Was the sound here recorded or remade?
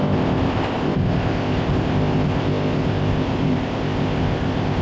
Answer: remade